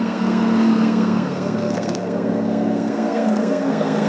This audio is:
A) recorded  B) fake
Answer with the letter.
B